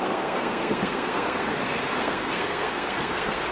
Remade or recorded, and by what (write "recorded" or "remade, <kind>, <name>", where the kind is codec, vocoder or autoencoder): remade, codec, SNAC